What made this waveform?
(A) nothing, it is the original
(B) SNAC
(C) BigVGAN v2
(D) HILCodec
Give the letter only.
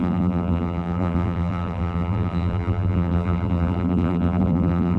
C